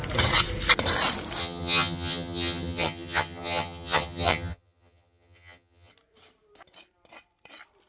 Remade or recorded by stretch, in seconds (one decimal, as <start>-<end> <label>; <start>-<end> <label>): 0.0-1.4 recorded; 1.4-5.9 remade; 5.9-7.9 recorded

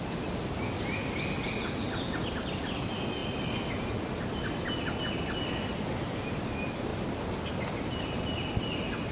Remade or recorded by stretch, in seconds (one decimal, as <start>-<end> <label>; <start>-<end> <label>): 0.0-9.1 recorded

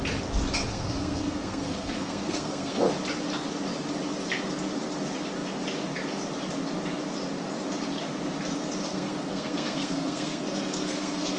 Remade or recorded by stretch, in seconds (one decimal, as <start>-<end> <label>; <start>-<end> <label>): 0.0-0.7 recorded; 0.7-2.9 remade; 2.9-8.8 recorded; 8.8-11.4 remade

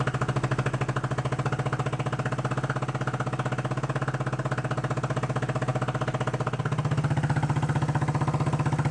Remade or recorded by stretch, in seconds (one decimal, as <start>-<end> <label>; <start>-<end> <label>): 0.0-8.9 recorded

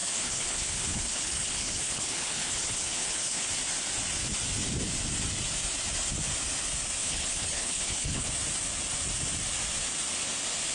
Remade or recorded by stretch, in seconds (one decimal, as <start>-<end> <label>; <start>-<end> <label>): 0.0-3.5 remade; 3.5-7.0 recorded; 7.0-8.3 remade; 8.3-10.7 recorded